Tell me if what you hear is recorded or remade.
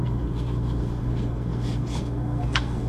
remade